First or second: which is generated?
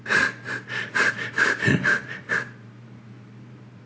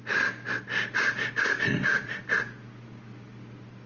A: first